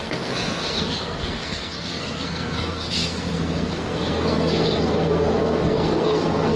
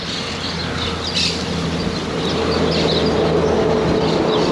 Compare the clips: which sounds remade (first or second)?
first